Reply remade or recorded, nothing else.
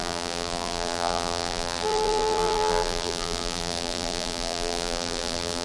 remade